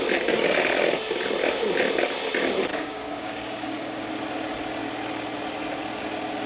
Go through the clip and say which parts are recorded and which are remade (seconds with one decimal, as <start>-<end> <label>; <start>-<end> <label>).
0.0-2.7 recorded; 2.7-4.1 remade; 4.1-6.5 recorded

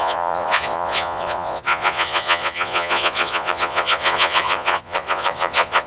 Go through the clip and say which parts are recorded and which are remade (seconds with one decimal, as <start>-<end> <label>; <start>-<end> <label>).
0.0-5.9 remade

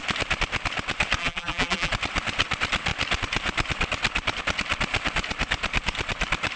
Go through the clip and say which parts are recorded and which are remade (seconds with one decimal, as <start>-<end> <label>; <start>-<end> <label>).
0.0-1.2 recorded; 1.2-1.9 remade; 1.9-6.6 recorded